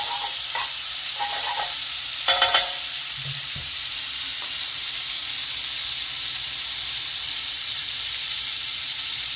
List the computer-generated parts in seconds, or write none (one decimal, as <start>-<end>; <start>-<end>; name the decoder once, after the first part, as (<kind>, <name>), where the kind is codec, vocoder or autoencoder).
0.0-5.2 (vocoder, BigVGAN v2); 7.1-9.4